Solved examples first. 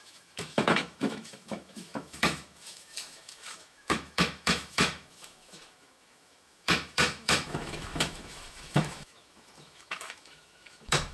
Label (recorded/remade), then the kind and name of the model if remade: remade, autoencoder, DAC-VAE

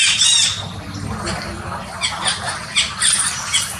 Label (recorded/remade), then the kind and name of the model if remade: recorded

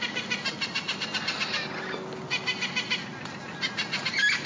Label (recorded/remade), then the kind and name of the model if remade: recorded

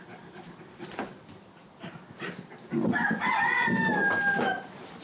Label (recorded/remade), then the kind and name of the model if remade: recorded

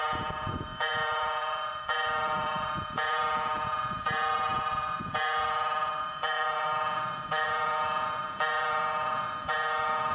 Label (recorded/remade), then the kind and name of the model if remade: remade, vocoder, Vocos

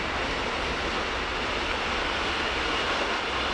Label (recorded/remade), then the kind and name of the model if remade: recorded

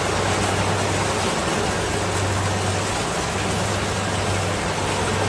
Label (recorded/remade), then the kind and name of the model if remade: recorded